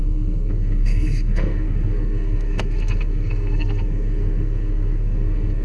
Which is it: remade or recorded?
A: remade